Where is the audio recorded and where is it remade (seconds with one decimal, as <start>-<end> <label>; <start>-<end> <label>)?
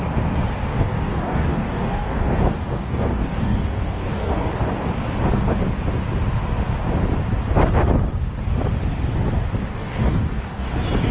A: 0.0-0.7 recorded; 0.7-4.5 remade; 4.5-9.7 recorded; 9.7-10.7 remade; 10.7-11.1 recorded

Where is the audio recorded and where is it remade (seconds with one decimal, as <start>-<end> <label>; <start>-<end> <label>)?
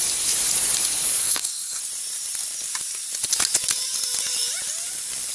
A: 0.0-1.2 recorded; 1.2-1.8 remade; 1.8-5.3 recorded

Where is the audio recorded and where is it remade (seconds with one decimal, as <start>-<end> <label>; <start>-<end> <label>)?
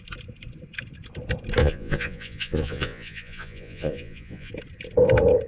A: 0.0-1.6 recorded; 1.6-4.5 remade; 4.5-5.5 recorded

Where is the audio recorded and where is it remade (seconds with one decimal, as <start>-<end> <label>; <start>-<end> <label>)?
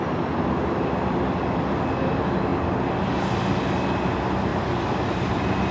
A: 0.0-4.5 recorded; 4.5-5.3 remade; 5.3-5.7 recorded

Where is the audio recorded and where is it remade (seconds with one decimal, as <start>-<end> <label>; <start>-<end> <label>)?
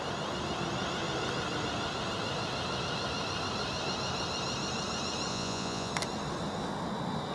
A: 0.0-5.3 recorded; 5.3-5.9 remade; 5.9-7.3 recorded